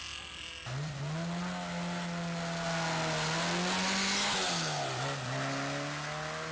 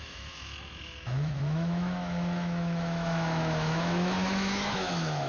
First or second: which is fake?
second